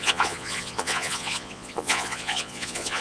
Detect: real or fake fake